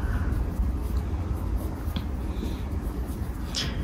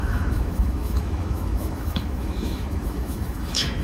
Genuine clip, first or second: first